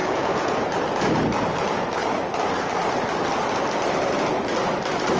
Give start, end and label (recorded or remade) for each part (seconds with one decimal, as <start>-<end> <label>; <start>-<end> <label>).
0.0-0.6 remade; 0.6-5.2 recorded